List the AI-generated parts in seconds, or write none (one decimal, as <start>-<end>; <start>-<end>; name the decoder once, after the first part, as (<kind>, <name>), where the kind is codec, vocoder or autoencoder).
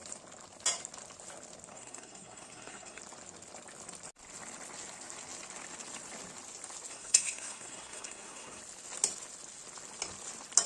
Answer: 1.7-3.0 (codec, SNAC); 6.9-8.6